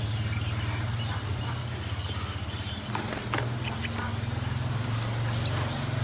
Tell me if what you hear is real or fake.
real